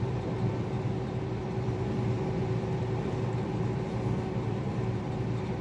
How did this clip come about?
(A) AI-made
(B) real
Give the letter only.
A